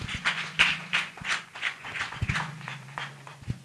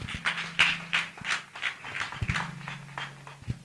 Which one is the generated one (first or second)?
first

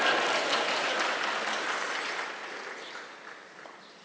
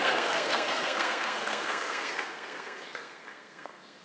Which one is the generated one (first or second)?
second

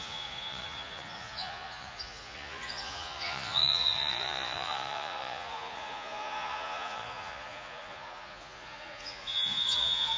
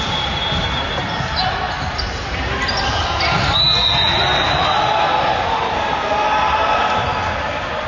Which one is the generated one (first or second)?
first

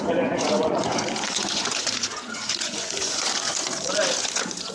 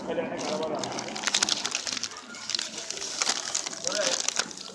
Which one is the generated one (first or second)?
first